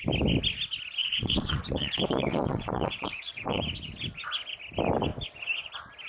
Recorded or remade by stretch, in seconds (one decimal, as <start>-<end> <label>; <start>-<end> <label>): 0.0-1.0 recorded; 1.0-3.6 remade; 3.6-6.1 recorded